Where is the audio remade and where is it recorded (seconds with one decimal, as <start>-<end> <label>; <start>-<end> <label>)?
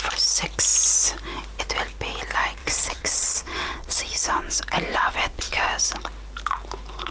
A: 0.0-2.6 recorded; 2.6-4.5 remade; 4.5-4.9 recorded; 4.9-5.7 remade; 5.7-7.1 recorded